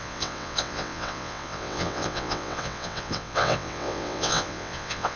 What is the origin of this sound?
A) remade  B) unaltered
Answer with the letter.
A